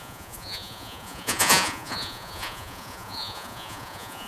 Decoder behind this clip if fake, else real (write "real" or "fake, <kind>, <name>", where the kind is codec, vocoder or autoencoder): fake, vocoder, Vocos